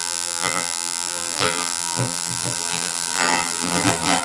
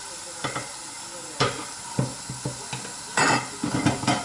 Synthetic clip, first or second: first